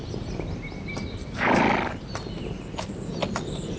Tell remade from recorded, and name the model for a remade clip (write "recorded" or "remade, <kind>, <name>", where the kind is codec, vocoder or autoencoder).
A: recorded